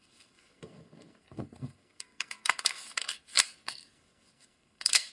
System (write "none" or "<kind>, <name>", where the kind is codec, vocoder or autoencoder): codec, SNAC